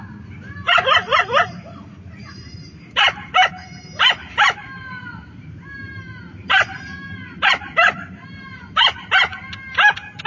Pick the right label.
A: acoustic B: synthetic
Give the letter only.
B